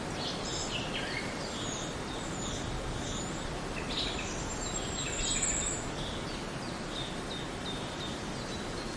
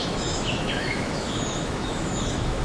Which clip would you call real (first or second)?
first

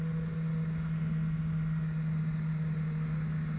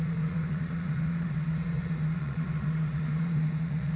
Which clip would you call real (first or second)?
first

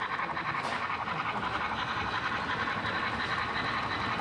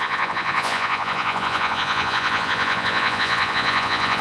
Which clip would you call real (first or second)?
first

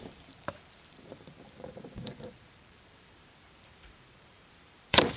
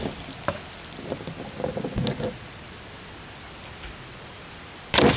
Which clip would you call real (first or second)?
second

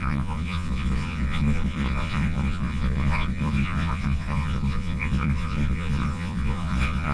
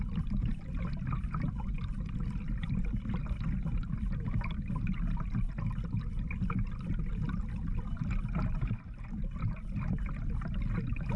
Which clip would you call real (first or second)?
second